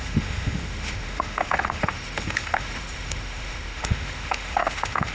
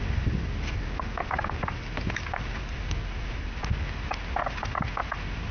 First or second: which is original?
second